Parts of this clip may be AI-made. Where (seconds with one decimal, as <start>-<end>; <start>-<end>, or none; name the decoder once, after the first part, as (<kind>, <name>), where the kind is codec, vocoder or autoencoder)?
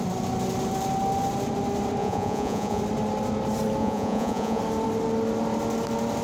2.0-2.8 (vocoder, Vocos); 3.8-4.6